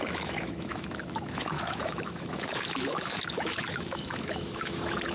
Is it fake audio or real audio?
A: fake